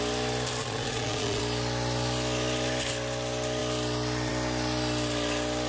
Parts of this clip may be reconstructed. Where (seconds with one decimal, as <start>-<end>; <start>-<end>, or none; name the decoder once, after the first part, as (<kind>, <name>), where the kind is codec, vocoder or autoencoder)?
0.6-1.4 (vocoder, Vocos)